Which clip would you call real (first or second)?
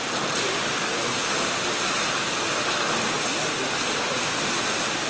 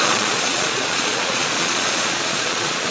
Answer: first